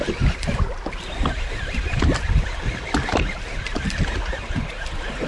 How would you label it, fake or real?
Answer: real